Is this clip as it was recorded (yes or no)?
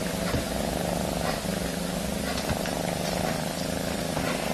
yes